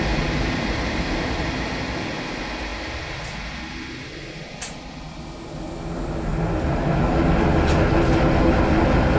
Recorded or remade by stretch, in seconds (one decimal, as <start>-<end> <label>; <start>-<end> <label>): 0.0-9.2 recorded